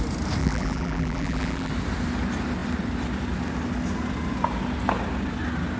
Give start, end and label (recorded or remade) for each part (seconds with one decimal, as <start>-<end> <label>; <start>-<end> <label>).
0.0-0.4 recorded; 0.4-1.7 remade; 1.7-5.8 recorded